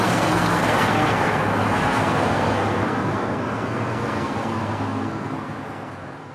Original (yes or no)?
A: no